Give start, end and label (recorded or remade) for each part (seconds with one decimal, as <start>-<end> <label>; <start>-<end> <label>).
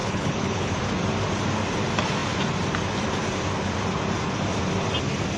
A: 0.0-0.7 remade; 0.7-5.4 recorded